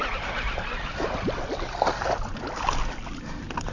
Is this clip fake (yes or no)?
no